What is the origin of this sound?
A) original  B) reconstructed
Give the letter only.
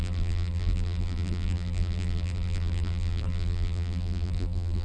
B